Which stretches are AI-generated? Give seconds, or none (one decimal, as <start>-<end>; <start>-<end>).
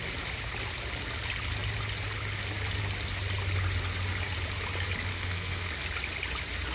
5.1-5.7